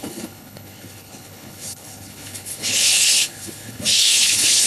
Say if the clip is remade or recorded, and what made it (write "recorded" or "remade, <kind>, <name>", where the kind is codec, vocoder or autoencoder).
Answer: remade, codec, HILCodec